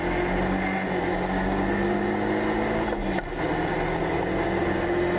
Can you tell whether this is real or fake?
real